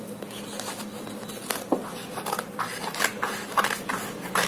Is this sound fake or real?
real